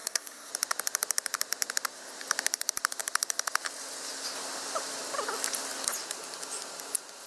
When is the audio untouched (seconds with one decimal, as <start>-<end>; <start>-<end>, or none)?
0.5-7.3